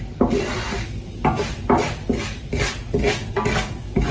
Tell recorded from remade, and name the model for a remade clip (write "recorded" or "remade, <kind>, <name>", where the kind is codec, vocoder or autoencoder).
recorded